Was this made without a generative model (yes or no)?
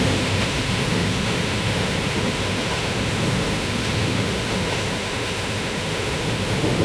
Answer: no